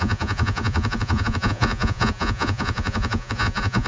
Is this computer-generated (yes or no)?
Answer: yes